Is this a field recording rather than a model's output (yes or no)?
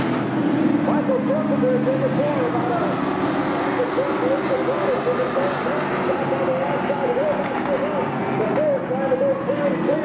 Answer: yes